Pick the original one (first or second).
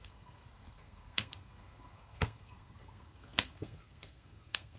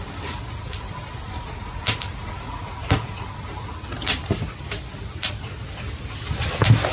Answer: second